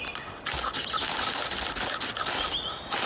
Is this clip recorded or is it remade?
recorded